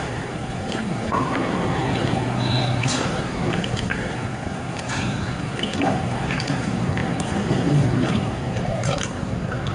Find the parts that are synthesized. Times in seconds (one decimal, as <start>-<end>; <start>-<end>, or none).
0.0-9.7